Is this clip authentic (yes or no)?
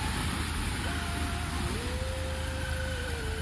yes